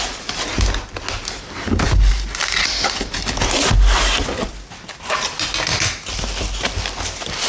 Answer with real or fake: real